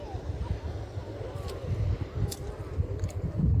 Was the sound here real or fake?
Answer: fake